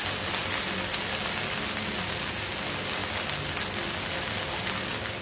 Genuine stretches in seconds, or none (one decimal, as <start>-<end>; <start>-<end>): 0.0-5.2